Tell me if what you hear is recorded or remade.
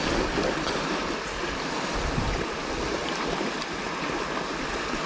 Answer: recorded